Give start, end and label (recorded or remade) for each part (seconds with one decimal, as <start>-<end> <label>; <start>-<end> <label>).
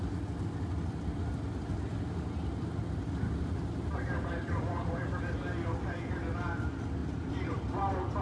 0.0-7.0 recorded; 7.0-7.6 remade; 7.6-8.2 recorded